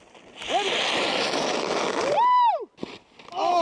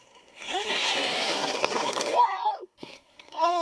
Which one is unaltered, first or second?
first